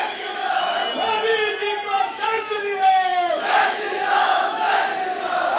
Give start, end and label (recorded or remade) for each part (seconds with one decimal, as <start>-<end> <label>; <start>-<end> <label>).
0.0-0.8 remade; 0.8-2.0 recorded; 2.0-4.9 remade; 4.9-5.6 recorded